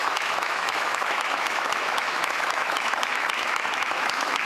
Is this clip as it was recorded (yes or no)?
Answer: no